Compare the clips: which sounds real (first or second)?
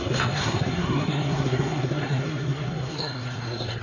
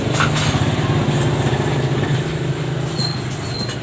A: second